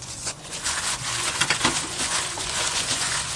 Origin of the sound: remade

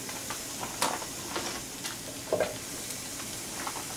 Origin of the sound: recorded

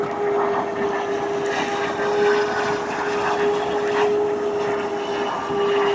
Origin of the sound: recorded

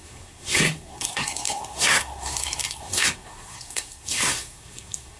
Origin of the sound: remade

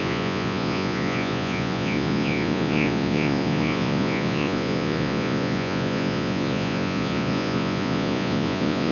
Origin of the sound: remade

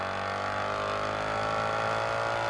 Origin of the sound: recorded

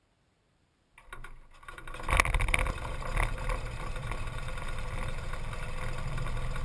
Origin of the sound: recorded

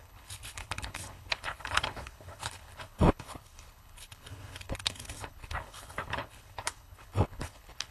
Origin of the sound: remade